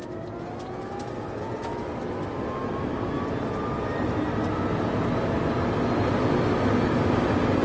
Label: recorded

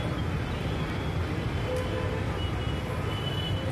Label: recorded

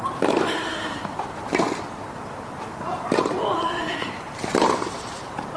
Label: remade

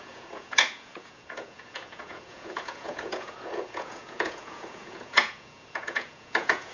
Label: remade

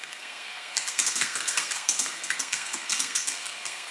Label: remade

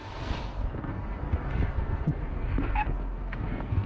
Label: remade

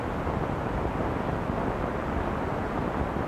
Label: recorded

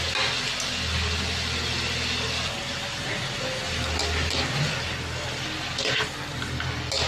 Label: recorded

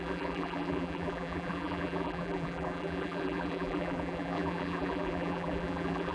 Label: remade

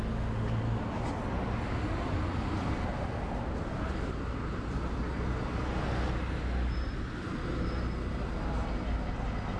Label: recorded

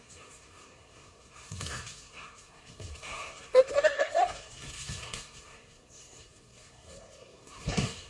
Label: remade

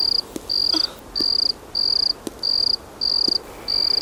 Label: recorded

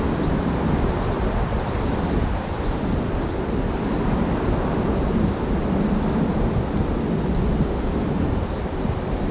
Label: recorded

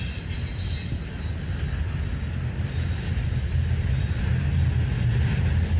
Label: recorded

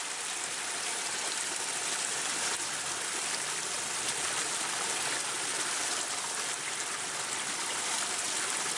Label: recorded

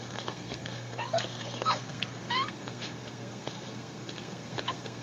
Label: remade